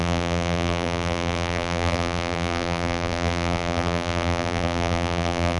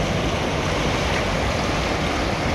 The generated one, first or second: first